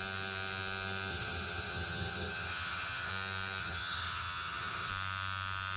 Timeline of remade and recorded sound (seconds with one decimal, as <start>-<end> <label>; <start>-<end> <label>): 0.0-1.1 recorded; 1.1-3.1 remade; 3.1-3.6 recorded; 3.6-4.9 remade; 4.9-5.8 recorded